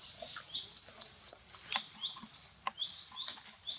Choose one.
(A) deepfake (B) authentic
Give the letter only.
B